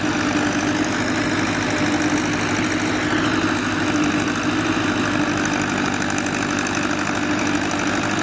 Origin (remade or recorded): recorded